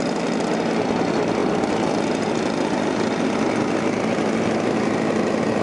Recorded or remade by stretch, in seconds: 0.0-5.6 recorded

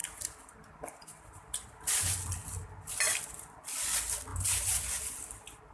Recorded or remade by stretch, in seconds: 0.0-1.9 remade; 1.9-2.4 recorded; 2.4-3.6 remade; 3.6-5.7 recorded

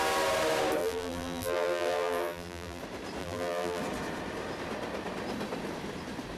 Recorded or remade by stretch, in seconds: 0.0-0.8 recorded; 0.8-2.8 remade; 2.8-3.2 recorded; 3.2-3.8 remade; 3.8-6.4 recorded

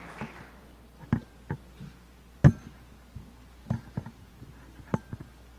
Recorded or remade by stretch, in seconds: 0.0-5.6 recorded

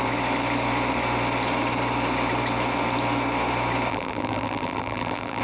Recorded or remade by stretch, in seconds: 0.0-3.9 recorded; 3.9-5.4 remade

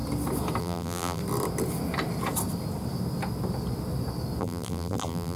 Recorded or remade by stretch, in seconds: 0.0-0.6 recorded; 0.6-1.2 remade; 1.2-4.4 recorded; 4.4-5.4 remade